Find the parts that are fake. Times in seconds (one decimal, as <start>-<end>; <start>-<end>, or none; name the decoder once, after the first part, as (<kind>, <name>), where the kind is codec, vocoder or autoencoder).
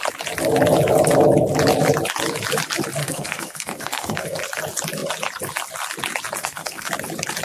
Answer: 3.0-4.4 (codec, SNAC); 6.4-6.9